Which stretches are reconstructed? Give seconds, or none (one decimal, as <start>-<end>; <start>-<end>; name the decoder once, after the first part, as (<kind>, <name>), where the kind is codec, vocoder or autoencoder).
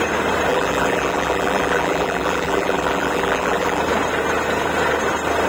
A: 0.5-3.8 (vocoder, BigVGAN v2)